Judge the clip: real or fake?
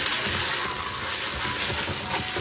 real